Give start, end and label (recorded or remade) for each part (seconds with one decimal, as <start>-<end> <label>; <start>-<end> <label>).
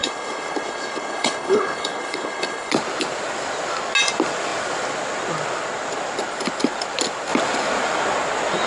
0.0-2.7 remade; 2.7-8.7 recorded